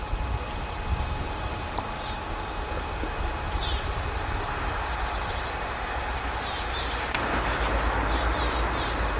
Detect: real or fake fake